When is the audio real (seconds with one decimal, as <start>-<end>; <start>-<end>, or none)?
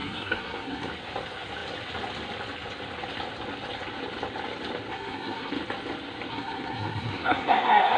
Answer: 0.9-4.9; 5.5-6.3